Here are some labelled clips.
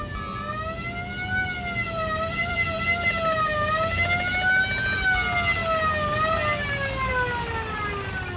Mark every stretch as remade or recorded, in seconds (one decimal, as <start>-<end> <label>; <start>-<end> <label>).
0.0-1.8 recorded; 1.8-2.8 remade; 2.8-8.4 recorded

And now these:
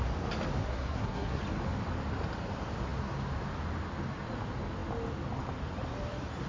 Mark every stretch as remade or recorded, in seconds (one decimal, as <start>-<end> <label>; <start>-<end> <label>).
0.0-0.6 recorded; 0.6-1.4 remade; 1.4-6.5 recorded

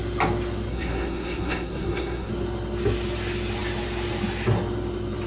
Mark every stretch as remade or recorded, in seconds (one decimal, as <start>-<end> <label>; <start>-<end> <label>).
0.0-0.7 recorded; 0.7-2.3 remade; 2.3-5.3 recorded

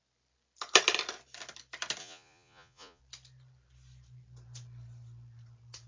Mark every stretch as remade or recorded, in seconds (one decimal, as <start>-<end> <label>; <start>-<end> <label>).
0.0-2.0 recorded; 2.0-3.0 remade; 3.0-5.9 recorded